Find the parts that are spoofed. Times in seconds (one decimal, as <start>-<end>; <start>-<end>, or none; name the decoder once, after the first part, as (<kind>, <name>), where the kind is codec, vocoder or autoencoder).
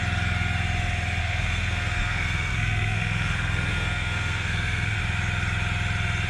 1.2-5.0 (codec, SNAC)